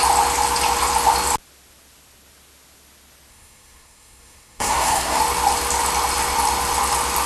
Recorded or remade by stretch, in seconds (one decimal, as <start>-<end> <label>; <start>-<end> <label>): 0.0-3.3 recorded; 3.3-5.2 remade; 5.2-7.3 recorded